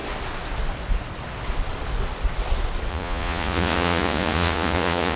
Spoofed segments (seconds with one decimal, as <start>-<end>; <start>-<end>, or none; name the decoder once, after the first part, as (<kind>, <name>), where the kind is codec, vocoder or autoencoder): 2.9-5.2 (vocoder, Vocos)